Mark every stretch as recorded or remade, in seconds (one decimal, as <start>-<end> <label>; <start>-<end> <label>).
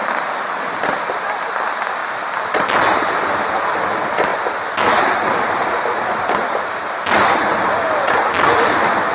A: 0.0-2.0 remade; 2.0-3.3 recorded; 3.3-4.3 remade; 4.3-4.9 recorded; 4.9-9.1 remade